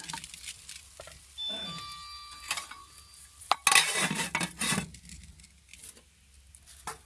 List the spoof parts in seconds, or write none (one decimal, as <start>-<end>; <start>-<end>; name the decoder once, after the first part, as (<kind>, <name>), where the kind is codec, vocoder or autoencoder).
none